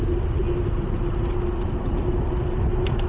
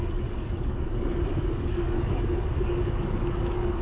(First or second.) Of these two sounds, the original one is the first